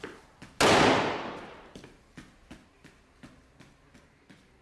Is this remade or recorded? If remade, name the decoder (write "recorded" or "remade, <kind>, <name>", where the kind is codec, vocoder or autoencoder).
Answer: recorded